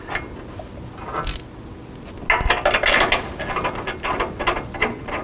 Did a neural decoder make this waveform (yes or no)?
no